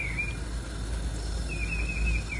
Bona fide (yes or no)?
yes